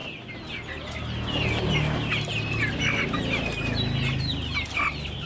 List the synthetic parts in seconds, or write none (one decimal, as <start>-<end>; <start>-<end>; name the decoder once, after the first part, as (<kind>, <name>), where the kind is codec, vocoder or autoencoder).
none